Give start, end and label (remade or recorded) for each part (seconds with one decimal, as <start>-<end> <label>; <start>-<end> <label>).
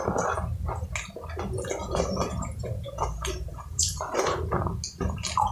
0.0-1.8 recorded; 1.8-4.4 remade; 4.4-5.5 recorded